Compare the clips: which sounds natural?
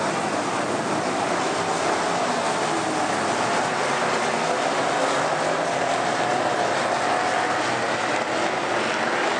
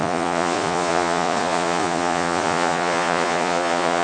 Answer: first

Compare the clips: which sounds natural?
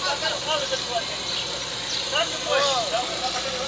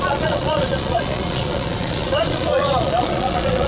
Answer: first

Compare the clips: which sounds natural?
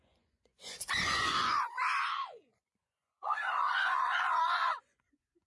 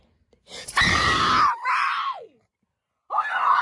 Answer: second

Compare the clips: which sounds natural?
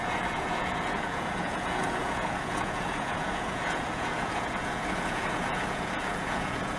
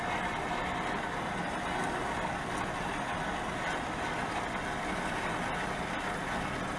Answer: second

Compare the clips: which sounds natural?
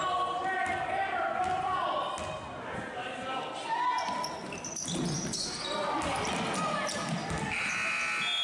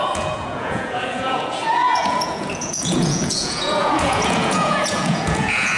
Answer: first